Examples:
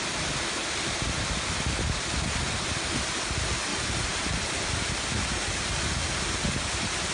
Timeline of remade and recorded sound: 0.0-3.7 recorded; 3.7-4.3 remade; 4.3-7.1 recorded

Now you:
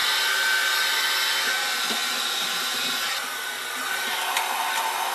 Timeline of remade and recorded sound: 0.0-5.1 recorded

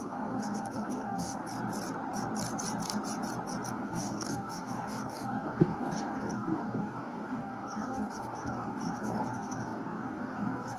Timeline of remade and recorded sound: 0.0-1.4 remade; 1.4-3.7 recorded; 3.7-10.8 remade

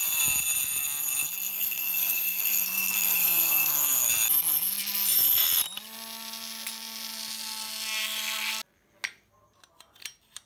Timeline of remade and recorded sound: 0.0-1.5 recorded; 1.5-4.1 remade; 4.1-10.5 recorded

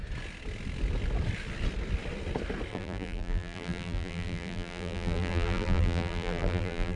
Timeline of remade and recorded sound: 0.0-2.7 recorded; 2.7-7.0 remade

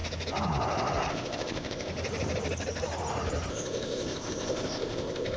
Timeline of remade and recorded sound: 0.0-1.1 recorded; 1.1-1.9 remade; 1.9-3.5 recorded; 3.5-5.4 remade

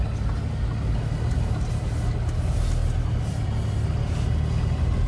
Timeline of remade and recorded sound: 0.0-5.1 recorded